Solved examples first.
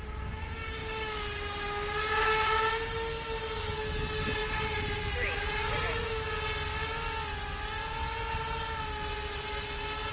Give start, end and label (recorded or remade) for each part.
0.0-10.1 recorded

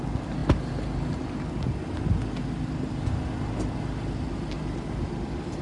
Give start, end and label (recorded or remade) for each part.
0.0-5.6 recorded

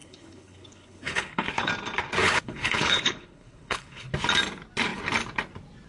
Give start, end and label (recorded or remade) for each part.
0.0-1.7 remade; 1.7-2.2 recorded; 2.2-4.1 remade; 4.1-5.9 recorded

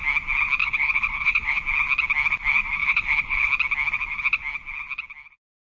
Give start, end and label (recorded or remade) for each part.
0.0-0.6 recorded; 0.6-1.6 remade; 1.6-2.8 recorded; 2.8-3.5 remade; 3.5-5.7 recorded